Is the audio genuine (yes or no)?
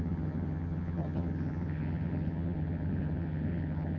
no